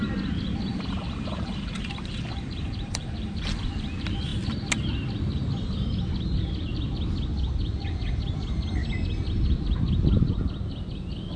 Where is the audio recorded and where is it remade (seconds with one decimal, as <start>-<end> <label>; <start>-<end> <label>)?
0.0-0.7 recorded; 0.7-3.4 remade; 3.4-11.4 recorded